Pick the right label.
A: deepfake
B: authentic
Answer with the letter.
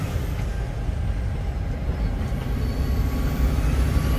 B